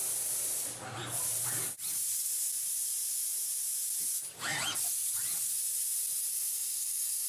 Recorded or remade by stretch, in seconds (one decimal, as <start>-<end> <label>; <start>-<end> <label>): 0.0-6.3 recorded; 6.3-7.3 remade